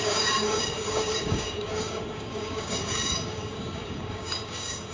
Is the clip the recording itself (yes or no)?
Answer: no